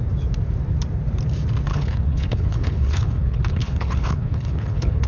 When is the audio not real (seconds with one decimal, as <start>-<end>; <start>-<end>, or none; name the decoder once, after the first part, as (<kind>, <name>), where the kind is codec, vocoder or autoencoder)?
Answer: 1.7-5.1 (codec, HILCodec)